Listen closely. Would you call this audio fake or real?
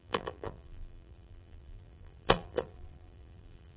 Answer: fake